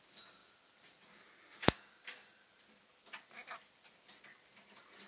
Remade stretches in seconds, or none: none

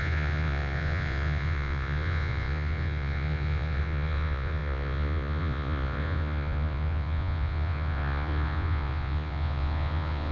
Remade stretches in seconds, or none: 0.0-10.3

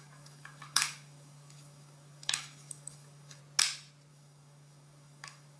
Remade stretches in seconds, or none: 0.0-3.4; 4.1-5.6

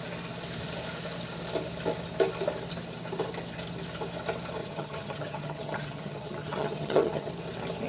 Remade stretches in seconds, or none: 4.6-7.3

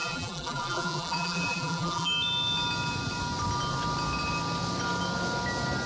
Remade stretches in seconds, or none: 0.0-2.1